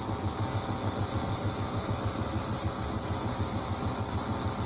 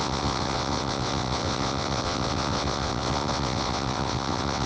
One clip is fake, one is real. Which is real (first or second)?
first